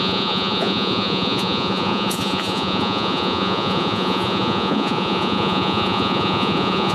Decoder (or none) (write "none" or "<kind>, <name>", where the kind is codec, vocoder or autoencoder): vocoder, Vocos